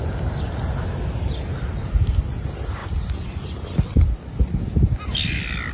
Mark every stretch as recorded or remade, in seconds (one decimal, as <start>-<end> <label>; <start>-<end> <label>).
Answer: 0.0-5.7 recorded